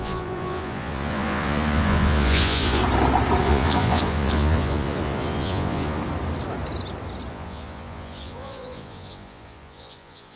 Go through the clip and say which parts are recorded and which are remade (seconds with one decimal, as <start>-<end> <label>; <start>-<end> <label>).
0.0-2.8 remade; 2.8-3.4 recorded; 3.4-6.0 remade; 6.0-7.3 recorded; 7.3-10.4 remade